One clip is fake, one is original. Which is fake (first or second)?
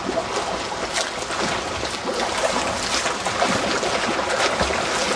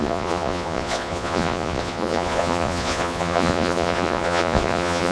second